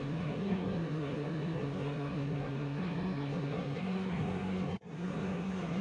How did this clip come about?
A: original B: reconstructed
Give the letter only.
B